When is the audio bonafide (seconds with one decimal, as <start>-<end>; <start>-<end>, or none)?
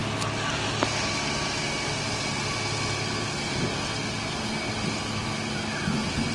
0.0-6.3